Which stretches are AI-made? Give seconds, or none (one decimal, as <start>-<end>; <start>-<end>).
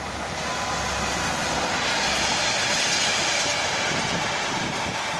none